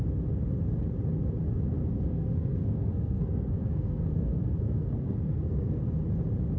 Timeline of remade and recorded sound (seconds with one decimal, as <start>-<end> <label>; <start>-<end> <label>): 0.0-1.8 recorded; 1.8-5.8 remade; 5.8-6.6 recorded